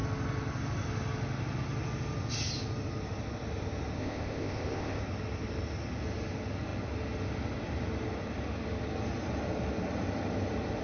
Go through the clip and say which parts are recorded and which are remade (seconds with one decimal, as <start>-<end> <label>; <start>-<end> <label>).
0.0-4.0 recorded; 4.0-5.0 remade; 5.0-10.8 recorded